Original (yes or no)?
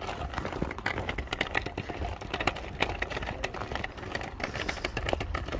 yes